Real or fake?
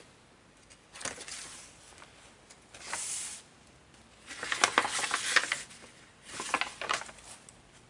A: real